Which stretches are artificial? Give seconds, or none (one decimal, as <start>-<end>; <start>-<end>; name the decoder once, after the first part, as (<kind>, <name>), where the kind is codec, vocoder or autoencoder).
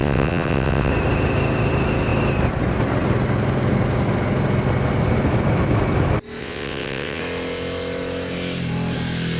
0.0-0.9 (vocoder, WaveNeXt); 6.4-7.2